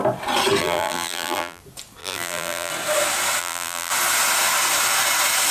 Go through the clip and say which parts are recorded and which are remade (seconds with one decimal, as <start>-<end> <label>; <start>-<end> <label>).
0.0-0.6 recorded; 0.6-1.6 remade; 1.6-2.0 recorded; 2.0-2.7 remade; 2.7-3.4 recorded; 3.4-3.9 remade; 3.9-5.5 recorded